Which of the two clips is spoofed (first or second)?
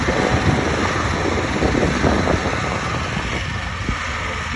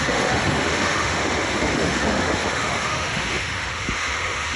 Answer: second